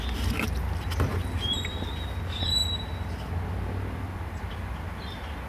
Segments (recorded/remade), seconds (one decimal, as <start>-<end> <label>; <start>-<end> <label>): 0.0-5.5 recorded